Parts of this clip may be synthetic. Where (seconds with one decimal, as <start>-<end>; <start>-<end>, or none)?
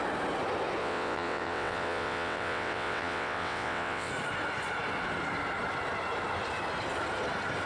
0.8-4.1